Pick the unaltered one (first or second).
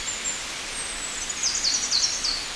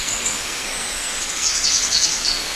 first